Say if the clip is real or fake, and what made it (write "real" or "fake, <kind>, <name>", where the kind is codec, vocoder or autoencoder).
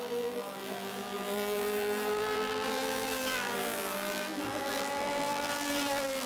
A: fake, vocoder, BigVGAN v2